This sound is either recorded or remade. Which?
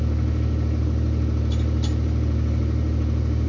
recorded